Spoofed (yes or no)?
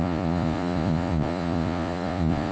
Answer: yes